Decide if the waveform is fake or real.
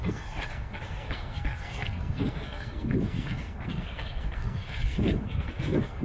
fake